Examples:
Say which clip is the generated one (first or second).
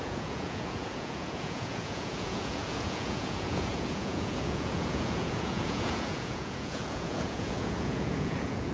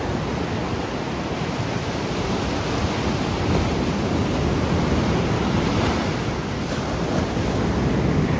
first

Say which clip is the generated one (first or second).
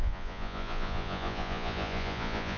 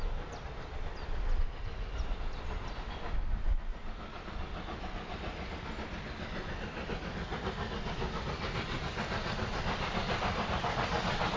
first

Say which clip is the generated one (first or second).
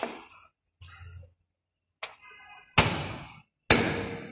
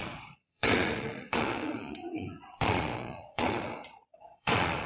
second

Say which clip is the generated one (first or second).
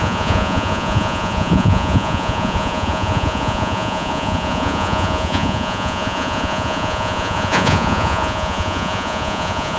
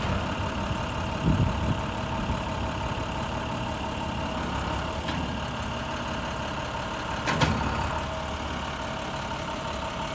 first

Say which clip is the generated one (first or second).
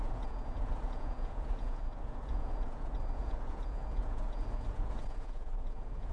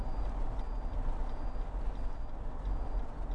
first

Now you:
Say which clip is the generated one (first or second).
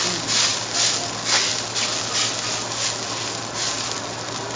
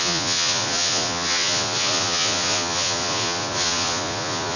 second